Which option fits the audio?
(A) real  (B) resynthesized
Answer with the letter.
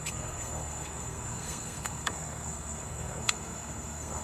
B